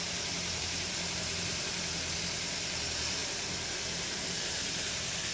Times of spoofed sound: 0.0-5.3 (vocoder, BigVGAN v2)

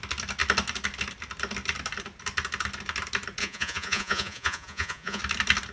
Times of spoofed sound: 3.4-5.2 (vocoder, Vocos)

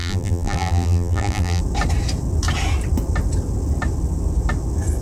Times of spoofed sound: 0.0-1.6 (vocoder, BigVGAN v2)

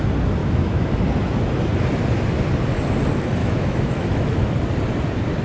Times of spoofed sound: 0.4-1.0 (autoencoder, DAC-VAE); 3.4-4.4

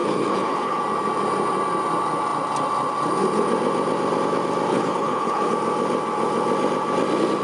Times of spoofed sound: 0.0-0.8 (codec, HILCodec); 4.7-5.5